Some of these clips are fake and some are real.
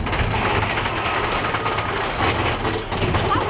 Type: real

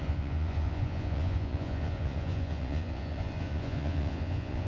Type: fake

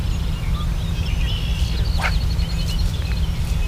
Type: real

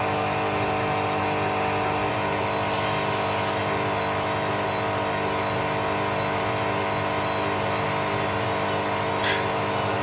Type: real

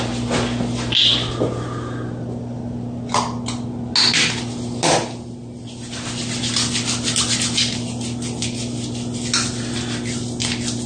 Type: real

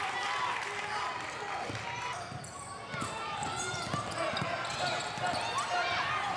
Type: real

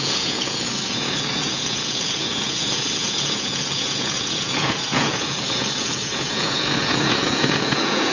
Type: fake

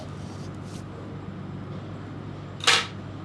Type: real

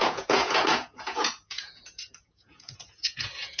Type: fake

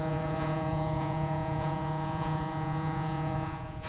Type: fake